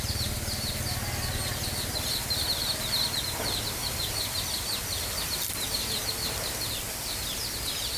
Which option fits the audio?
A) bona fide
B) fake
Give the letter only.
A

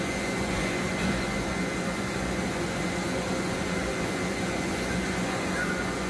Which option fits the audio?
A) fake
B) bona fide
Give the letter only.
A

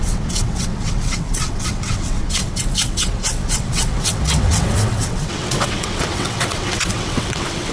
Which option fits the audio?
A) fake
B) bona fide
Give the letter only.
A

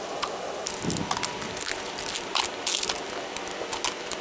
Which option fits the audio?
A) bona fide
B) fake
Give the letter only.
A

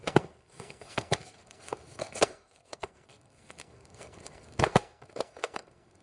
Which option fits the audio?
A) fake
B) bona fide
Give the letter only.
A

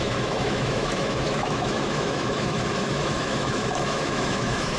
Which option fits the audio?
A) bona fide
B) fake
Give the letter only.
B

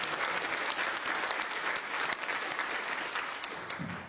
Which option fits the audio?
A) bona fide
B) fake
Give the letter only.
A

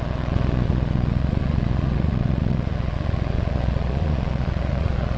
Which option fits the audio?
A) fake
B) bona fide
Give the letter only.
A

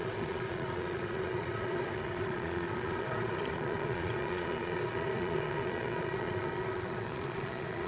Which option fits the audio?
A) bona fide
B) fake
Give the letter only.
B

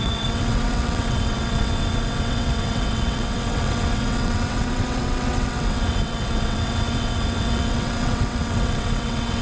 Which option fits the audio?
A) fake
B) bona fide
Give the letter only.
A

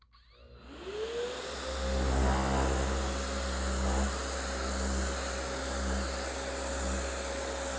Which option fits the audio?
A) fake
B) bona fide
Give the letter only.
B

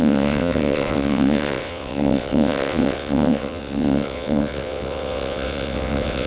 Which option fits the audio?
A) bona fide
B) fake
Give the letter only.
B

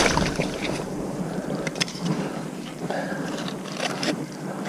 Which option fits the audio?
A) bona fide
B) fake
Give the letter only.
B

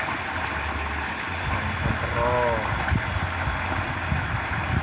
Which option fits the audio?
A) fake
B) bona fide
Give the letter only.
B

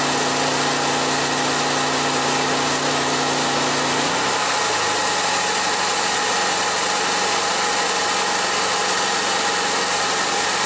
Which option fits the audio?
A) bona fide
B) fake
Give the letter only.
A